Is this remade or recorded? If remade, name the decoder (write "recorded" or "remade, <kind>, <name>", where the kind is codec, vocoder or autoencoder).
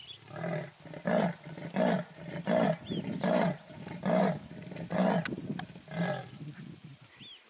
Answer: recorded